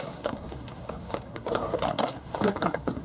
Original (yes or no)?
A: no